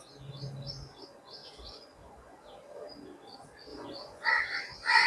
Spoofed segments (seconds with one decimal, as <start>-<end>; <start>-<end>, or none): 1.4-2.4; 3.7-4.3